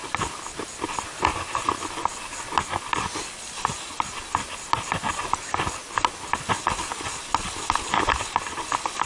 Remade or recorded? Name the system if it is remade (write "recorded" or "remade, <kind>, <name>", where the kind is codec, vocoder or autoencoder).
recorded